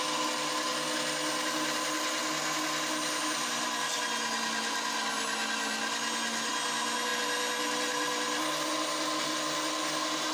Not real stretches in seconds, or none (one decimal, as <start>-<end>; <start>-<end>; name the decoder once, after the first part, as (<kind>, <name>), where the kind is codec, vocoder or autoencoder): none